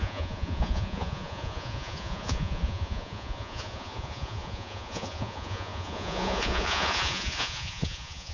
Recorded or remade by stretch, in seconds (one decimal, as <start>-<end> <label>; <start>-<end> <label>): 0.0-8.3 remade